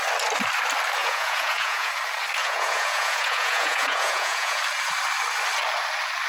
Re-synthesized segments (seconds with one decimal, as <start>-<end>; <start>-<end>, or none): 1.0-1.9; 2.4-4.6